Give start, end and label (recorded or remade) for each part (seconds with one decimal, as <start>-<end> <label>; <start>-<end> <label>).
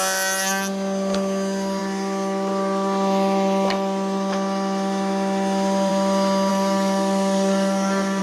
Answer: 0.0-6.5 recorded; 6.5-8.2 remade